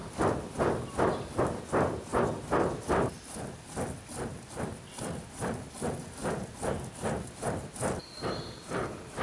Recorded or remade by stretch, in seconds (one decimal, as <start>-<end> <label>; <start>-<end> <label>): 0.0-9.2 recorded